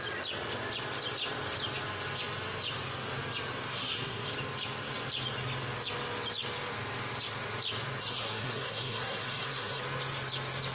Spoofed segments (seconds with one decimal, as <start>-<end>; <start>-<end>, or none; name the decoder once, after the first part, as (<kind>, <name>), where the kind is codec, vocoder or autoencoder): 3.7-4.3 (codec, SNAC); 8.0-9.8